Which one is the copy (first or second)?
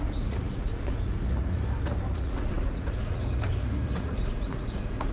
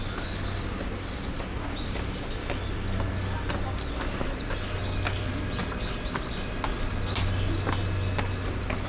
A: first